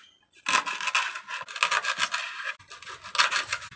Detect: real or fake real